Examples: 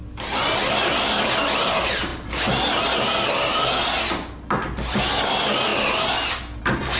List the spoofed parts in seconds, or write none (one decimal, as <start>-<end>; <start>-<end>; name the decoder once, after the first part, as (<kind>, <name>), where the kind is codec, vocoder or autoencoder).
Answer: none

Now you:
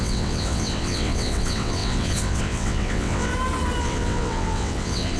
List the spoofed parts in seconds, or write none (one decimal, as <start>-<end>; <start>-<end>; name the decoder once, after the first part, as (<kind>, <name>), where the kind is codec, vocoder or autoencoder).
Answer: 0.0-3.3 (vocoder, WaveNeXt); 3.8-5.2

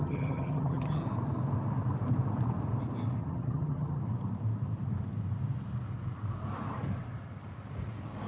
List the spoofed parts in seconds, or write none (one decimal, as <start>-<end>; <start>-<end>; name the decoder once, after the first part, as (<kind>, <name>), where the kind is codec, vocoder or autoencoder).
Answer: 0.0-1.0 (vocoder, HiFi-GAN); 3.2-4.0